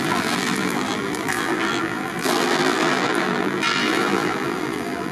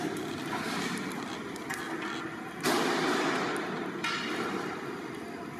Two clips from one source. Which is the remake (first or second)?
first